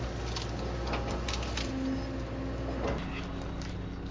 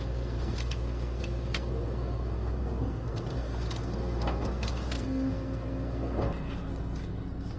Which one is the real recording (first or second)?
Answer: first